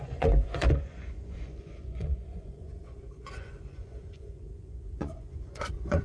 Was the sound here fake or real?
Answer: fake